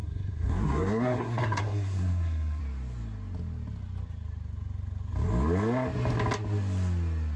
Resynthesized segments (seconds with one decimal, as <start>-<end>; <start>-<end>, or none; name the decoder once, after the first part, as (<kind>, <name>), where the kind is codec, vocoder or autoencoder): 0.0-2.6 (codec, SNAC)